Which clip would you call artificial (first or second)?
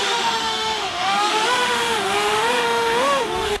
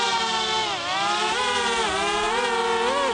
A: first